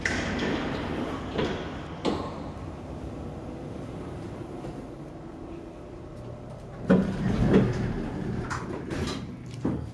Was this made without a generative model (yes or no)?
no